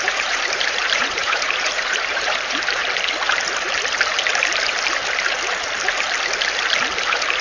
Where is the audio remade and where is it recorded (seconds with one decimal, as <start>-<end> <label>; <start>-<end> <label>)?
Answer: 0.0-2.8 remade; 2.8-7.4 recorded